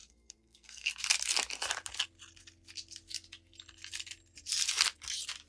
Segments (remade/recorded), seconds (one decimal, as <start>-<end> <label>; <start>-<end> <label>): 0.0-0.9 remade; 0.9-5.5 recorded